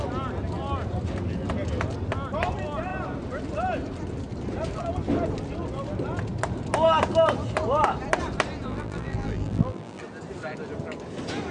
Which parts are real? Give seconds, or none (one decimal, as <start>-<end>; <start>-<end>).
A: 0.0-8.7; 10.0-11.5